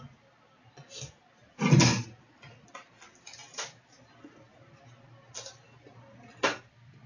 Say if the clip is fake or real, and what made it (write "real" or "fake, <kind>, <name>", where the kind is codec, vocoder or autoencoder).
real